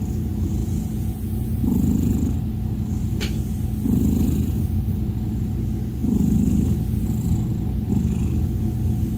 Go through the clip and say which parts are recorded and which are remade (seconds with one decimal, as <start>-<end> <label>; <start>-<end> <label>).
0.0-0.6 recorded; 0.6-2.2 remade; 2.2-9.2 recorded

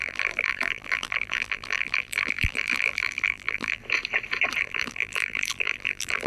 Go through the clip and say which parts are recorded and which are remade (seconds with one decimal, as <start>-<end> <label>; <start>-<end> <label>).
0.0-3.8 remade; 3.8-4.6 recorded; 4.6-6.3 remade

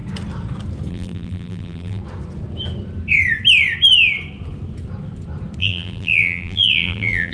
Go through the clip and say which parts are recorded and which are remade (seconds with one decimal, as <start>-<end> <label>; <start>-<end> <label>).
0.0-0.9 recorded; 0.9-2.0 remade; 2.0-5.6 recorded; 5.6-7.3 remade

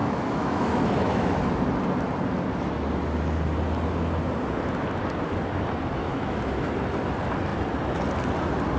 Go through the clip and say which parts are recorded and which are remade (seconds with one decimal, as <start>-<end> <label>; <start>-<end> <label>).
0.0-1.5 remade; 1.5-6.0 recorded; 6.0-6.7 remade; 6.7-8.8 recorded

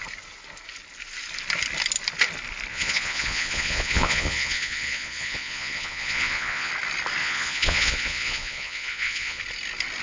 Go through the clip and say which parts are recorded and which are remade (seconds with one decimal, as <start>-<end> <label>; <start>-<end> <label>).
0.0-2.7 recorded; 2.7-6.7 remade; 6.7-7.2 recorded; 7.2-9.4 remade; 9.4-10.0 recorded

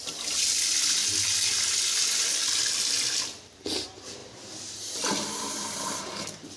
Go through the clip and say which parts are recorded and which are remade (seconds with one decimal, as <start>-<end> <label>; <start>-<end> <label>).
0.0-6.6 recorded